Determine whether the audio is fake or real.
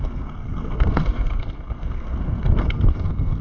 fake